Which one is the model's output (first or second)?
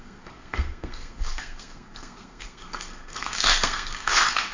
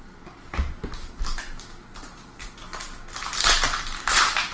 first